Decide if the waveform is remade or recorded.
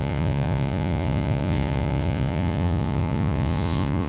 remade